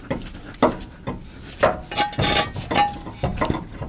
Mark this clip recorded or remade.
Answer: recorded